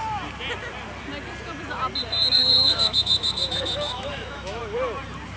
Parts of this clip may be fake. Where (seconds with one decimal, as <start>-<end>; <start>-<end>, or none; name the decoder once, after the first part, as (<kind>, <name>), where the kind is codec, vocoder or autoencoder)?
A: 2.4-4.6 (autoencoder, DAC-VAE)